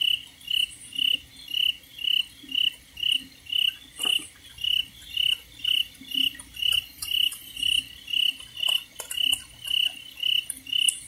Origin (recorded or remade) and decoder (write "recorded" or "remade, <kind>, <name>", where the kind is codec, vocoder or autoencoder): recorded